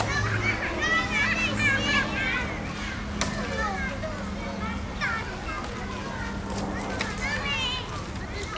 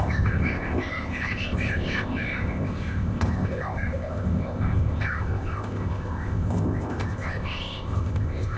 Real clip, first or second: first